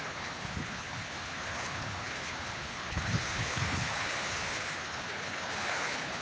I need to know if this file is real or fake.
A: fake